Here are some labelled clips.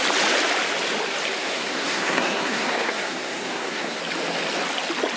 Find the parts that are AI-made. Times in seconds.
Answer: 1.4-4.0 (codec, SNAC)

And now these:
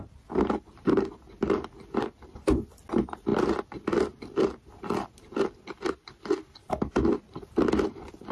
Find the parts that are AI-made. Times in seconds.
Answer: none